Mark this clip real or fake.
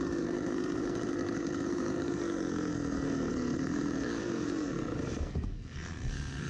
fake